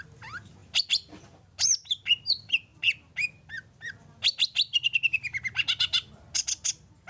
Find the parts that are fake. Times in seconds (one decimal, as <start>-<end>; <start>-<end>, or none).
none